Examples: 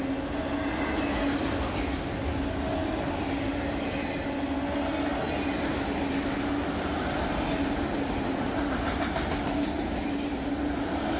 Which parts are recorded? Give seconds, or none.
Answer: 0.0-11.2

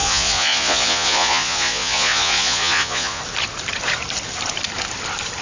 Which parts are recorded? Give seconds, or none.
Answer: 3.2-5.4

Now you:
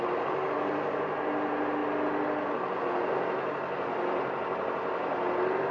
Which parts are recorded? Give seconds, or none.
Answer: 0.0-5.7

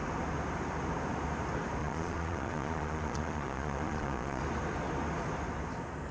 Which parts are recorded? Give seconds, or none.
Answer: 0.0-1.8; 4.4-6.1